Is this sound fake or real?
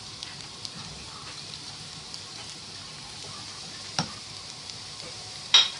fake